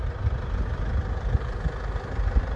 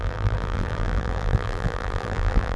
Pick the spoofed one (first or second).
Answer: second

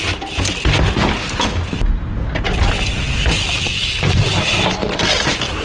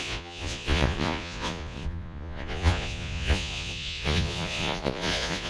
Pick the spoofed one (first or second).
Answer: second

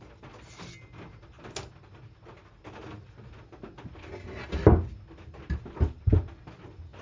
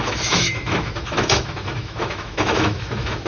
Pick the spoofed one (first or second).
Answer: second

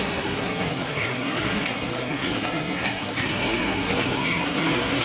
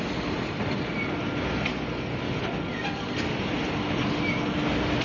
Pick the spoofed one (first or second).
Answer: first